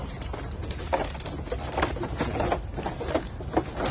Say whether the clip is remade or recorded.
recorded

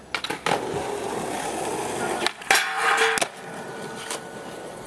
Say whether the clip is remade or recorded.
recorded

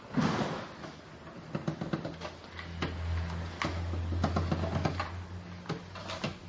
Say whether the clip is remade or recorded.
recorded